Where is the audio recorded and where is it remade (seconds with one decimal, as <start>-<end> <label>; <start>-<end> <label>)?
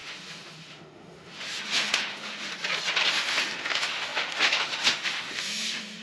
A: 0.0-2.5 remade; 2.5-3.1 recorded; 3.1-6.0 remade